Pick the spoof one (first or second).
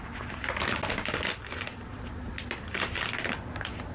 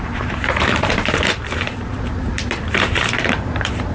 second